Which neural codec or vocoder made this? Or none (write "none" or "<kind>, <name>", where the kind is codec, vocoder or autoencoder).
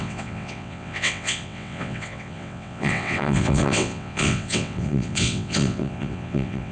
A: vocoder, WaveNeXt